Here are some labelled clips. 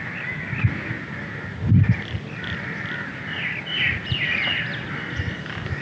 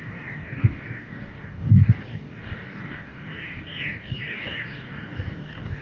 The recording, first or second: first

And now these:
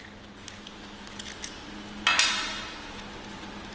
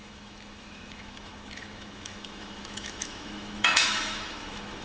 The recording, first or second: first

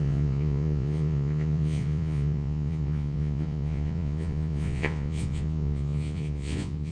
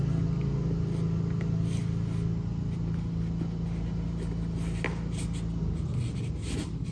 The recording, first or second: second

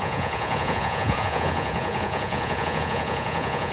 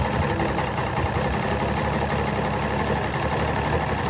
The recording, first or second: second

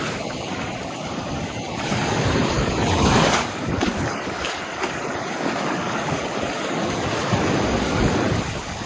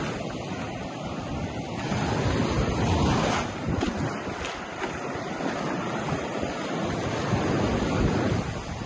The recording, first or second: second